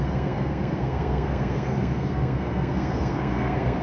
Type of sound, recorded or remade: remade